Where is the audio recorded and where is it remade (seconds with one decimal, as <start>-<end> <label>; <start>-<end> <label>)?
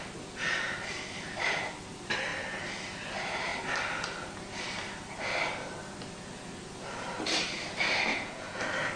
0.0-8.1 recorded; 8.1-8.6 remade; 8.6-9.0 recorded